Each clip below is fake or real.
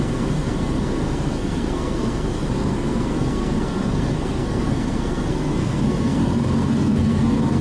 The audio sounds fake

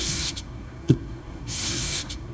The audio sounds fake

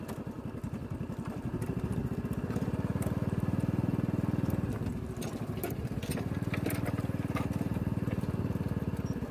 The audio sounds real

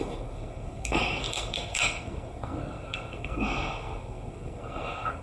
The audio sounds fake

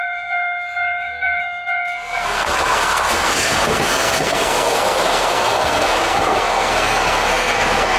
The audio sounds fake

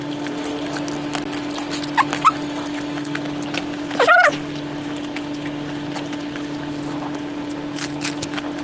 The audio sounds real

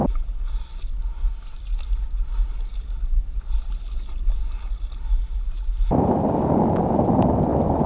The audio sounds real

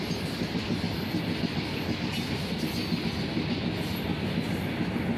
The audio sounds real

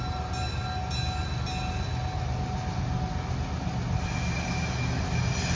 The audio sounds real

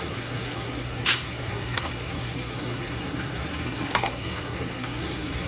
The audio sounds fake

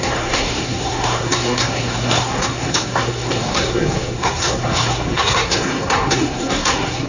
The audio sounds fake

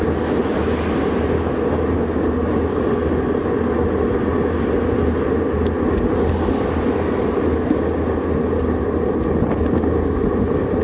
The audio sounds real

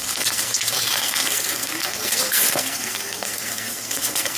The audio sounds fake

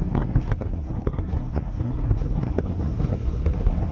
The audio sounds fake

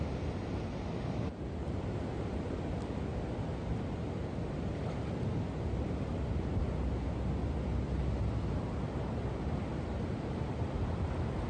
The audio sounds real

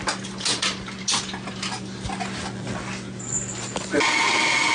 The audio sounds real